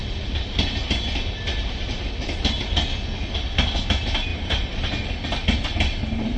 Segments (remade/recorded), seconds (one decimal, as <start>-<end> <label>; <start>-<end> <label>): 0.0-6.4 recorded